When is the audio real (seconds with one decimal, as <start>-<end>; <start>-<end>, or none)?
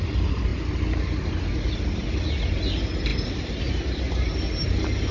0.0-5.1